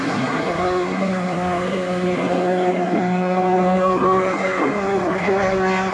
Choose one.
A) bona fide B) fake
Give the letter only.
B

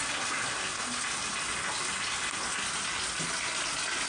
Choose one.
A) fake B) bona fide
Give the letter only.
B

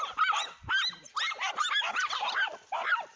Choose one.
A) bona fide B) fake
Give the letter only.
A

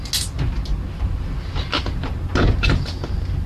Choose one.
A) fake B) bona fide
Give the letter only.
B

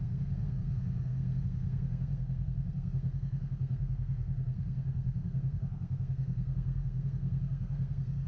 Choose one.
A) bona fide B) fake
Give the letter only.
B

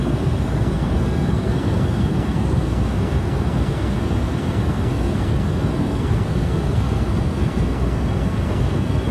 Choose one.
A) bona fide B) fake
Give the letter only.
B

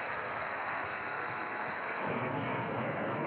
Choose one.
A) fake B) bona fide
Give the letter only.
A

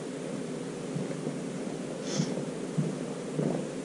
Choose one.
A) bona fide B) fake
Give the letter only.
A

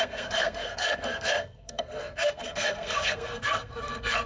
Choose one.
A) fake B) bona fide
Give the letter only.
A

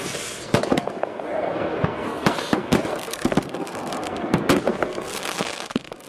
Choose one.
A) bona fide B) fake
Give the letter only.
B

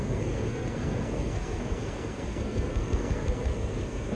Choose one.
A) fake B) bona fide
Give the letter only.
A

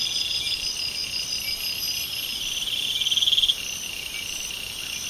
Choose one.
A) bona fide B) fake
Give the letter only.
A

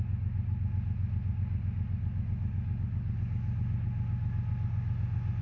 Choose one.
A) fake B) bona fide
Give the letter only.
B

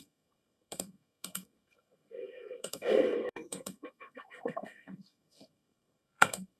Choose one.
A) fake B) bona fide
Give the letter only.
A